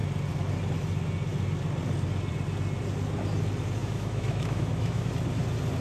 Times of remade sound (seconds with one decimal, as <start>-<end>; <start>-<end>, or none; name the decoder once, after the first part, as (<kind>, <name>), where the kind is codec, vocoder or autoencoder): 3.8-5.1 (autoencoder, DAC-VAE)

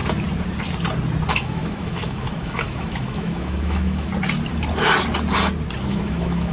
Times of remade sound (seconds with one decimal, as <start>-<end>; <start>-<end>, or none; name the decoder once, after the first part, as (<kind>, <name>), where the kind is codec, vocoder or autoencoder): 1.3-4.1 (autoencoder, DAC-VAE); 5.9-6.5

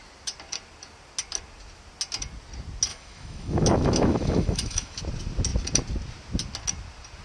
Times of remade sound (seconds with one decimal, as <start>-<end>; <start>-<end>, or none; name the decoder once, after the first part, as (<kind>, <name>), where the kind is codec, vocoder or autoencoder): 2.9-5.0 (autoencoder, DAC-VAE)

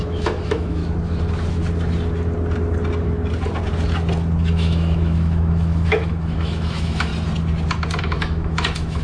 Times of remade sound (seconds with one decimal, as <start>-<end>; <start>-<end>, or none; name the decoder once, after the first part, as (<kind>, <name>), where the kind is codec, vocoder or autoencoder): 0.0-0.8 (autoencoder, DAC-VAE); 4.5-7.1; 8.0-9.0

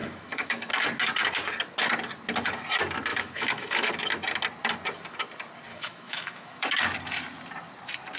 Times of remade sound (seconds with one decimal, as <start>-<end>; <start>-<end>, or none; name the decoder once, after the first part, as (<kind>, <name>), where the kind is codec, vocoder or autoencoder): 0.0-0.7 (autoencoder, DAC-VAE); 3.1-3.9; 5.7-6.7

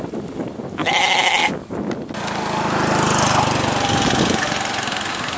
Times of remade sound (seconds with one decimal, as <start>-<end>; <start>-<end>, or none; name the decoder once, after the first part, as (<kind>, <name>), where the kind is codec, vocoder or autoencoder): none

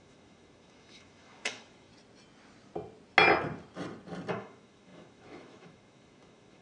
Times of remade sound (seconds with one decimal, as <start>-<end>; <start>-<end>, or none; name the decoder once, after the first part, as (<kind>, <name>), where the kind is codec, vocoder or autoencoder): 0.0-1.9 (autoencoder, DAC-VAE); 4.3-6.6

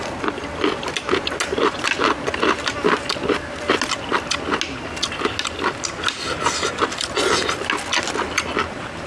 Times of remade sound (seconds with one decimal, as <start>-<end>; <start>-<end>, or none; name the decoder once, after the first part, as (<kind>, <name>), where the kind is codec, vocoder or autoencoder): none